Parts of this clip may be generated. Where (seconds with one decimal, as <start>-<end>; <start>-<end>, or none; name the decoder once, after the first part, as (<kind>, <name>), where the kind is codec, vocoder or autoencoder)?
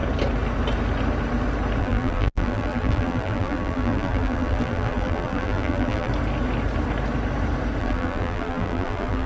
1.8-6.1 (vocoder, BigVGAN v2); 7.8-9.3